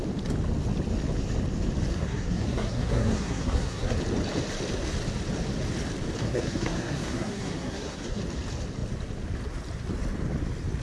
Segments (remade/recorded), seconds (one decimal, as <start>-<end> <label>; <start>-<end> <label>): 0.0-1.9 recorded; 1.9-4.0 remade; 4.0-6.2 recorded; 6.2-8.2 remade; 8.2-10.8 recorded